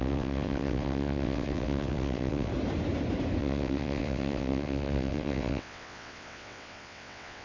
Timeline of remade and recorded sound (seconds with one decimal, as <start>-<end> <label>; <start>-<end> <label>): 0.0-2.5 remade; 2.5-3.4 recorded; 3.4-7.4 remade